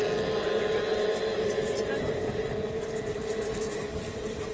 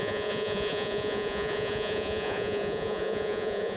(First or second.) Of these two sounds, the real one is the first